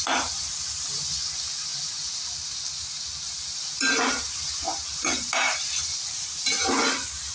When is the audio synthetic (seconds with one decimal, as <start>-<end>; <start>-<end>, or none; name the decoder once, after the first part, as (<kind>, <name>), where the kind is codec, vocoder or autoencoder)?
4.1-6.4 (vocoder, BigVGAN v2)